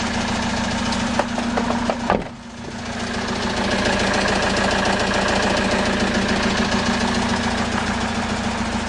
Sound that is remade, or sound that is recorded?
recorded